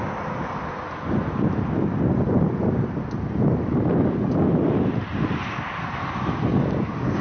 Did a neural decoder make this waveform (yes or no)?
no